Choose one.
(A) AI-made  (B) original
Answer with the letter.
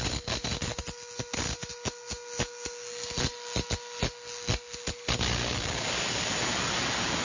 B